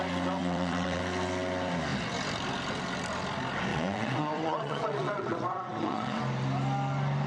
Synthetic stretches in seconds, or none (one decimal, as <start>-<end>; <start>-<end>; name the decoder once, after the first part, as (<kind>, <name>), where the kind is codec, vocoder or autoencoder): 0.4-1.0 (vocoder, WaveNeXt); 3.7-6.2